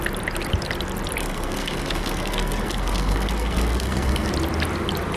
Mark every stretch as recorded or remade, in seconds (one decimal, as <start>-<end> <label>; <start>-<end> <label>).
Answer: 0.0-1.2 recorded; 1.2-4.3 remade; 4.3-5.2 recorded